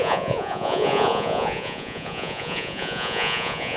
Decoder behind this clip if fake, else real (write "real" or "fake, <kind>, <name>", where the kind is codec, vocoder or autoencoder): fake, vocoder, Vocos